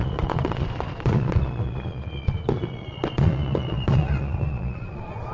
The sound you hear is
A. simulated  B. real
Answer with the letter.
A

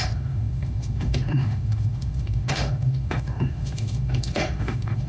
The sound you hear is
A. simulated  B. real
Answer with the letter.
A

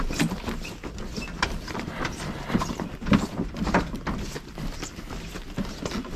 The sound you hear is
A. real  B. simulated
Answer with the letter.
A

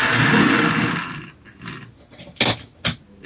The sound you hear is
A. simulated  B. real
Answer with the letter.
B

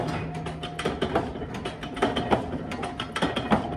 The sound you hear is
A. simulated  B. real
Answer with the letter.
B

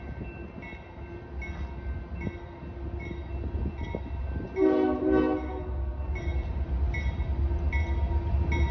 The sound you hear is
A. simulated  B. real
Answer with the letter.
B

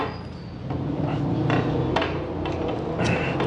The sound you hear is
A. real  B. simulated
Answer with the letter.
A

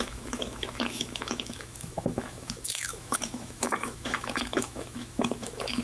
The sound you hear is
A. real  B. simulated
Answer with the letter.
B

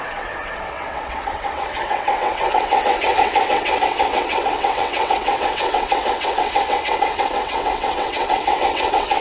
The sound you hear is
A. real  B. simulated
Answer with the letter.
B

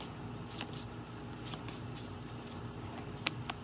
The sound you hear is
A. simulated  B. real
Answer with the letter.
B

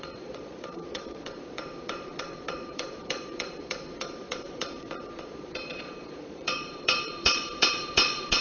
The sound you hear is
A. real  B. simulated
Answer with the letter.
B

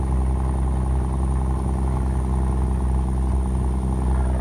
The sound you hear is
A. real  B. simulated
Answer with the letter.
A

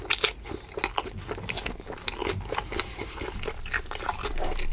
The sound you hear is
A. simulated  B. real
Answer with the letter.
B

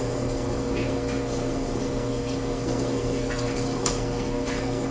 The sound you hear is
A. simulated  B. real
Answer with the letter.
A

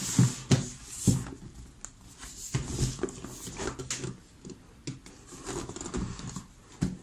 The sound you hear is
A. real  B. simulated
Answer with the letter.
A